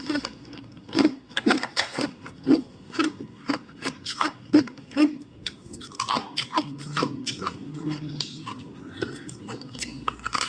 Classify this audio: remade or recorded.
remade